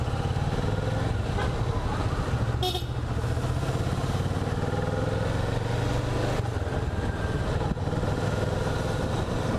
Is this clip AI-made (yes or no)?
no